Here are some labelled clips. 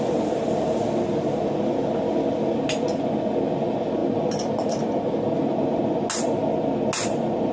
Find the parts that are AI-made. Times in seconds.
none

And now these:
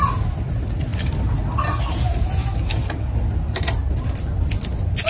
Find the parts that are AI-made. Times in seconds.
none

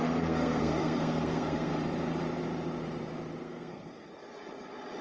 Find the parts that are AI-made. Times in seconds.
0.0-1.7 (codec, SNAC); 3.4-4.1

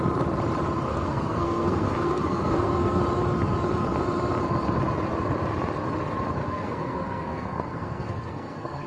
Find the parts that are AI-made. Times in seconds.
0.9-3.0 (codec, SNAC); 6.4-8.9

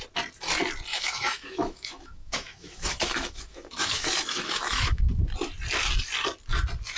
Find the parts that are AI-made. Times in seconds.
0.9-5.0 (autoencoder, DAC-VAE)